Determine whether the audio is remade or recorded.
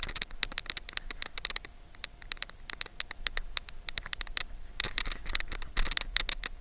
recorded